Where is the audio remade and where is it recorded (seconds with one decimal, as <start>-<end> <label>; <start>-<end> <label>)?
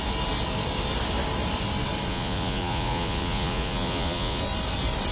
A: 0.0-2.1 recorded; 2.1-4.4 remade; 4.4-5.1 recorded